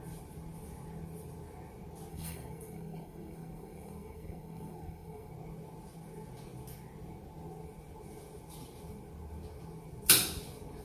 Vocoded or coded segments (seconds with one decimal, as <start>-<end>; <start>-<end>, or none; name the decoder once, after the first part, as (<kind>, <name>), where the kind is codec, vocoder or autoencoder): 2.1-5.3 (codec, SNAC)